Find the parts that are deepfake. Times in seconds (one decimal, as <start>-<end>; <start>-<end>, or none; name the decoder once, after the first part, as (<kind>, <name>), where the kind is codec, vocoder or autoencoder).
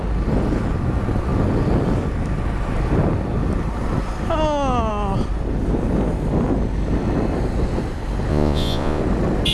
8.3-9.0 (vocoder, Vocos)